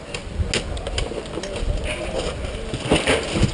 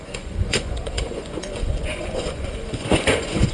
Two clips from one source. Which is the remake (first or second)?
second